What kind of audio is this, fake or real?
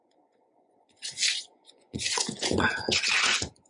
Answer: fake